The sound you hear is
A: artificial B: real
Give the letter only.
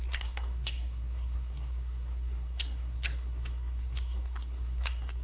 A